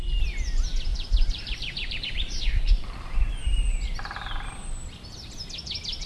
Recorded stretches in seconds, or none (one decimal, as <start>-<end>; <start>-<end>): 0.0-0.9; 3.6-6.1